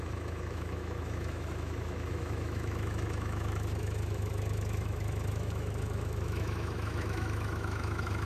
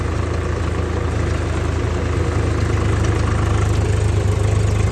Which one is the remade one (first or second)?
first